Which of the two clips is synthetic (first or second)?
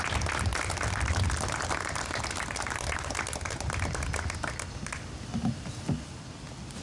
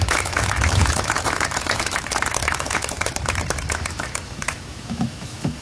second